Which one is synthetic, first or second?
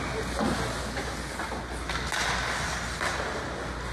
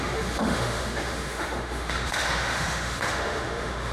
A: second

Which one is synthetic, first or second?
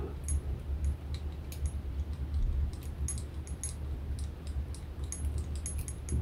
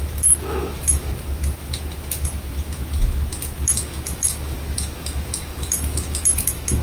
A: second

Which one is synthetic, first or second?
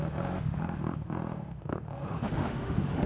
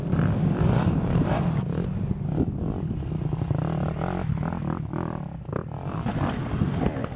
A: first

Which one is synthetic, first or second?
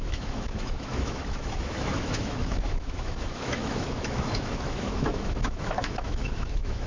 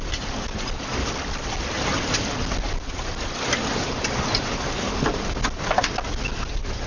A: first